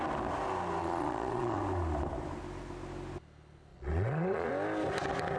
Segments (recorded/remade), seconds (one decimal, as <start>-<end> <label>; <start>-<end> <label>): 0.0-0.8 recorded; 0.8-1.6 remade; 1.6-3.7 recorded; 3.7-4.5 remade; 4.5-5.4 recorded